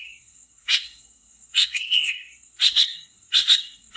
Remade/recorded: remade